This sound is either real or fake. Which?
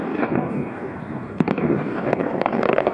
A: fake